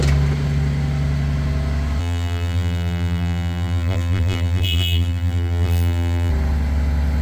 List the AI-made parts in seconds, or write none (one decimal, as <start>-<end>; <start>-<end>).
2.0-6.3